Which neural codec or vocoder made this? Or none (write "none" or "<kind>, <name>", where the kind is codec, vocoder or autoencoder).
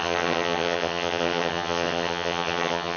vocoder, HiFi-GAN